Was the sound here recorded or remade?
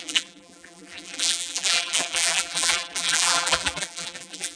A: remade